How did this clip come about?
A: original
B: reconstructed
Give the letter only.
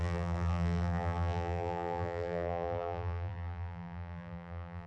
B